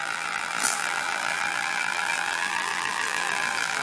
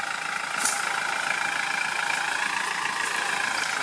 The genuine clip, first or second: second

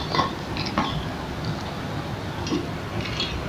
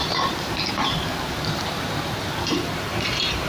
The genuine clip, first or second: first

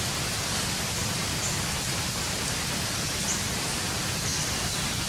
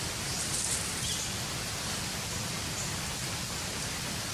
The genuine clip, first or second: first